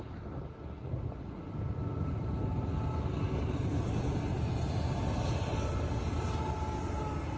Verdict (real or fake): real